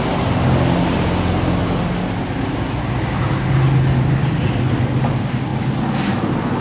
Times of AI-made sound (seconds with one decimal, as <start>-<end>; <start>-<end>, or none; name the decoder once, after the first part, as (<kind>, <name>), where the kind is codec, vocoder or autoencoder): none